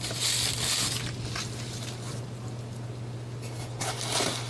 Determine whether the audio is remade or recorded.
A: recorded